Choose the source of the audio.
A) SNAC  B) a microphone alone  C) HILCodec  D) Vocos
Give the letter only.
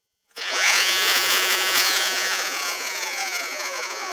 D